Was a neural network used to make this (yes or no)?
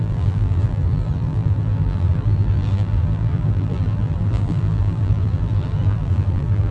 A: yes